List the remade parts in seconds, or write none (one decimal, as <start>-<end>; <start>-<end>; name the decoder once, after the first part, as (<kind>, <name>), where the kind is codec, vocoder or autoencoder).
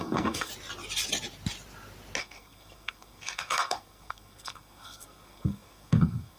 0.0-0.5 (codec, SNAC); 2.2-6.4